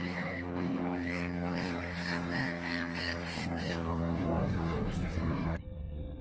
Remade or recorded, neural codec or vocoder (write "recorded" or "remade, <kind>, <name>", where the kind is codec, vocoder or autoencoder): remade, codec, SNAC